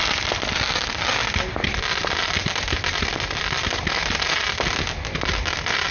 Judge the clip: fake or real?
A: real